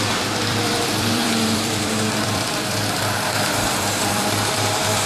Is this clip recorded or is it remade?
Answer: remade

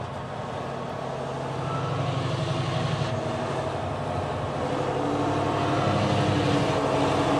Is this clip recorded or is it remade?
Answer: recorded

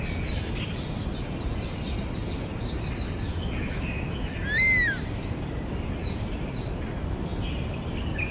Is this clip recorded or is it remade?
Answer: recorded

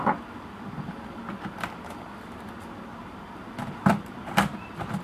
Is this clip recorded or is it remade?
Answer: recorded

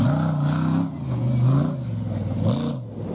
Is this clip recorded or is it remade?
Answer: recorded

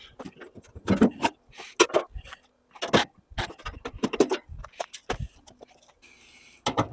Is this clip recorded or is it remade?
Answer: recorded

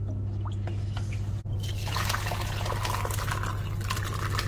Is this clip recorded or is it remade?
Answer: recorded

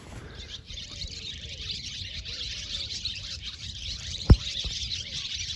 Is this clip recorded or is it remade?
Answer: remade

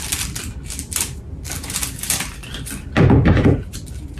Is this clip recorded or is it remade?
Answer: recorded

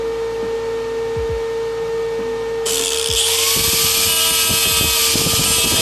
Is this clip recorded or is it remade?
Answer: recorded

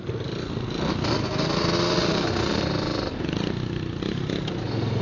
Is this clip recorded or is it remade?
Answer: recorded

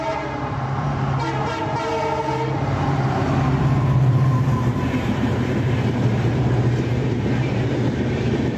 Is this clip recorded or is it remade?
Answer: remade